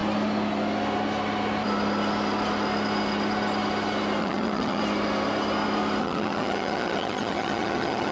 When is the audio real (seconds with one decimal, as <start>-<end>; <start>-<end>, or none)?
0.0-4.2; 4.8-6.0